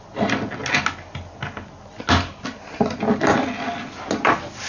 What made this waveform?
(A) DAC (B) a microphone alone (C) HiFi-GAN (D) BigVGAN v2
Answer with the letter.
B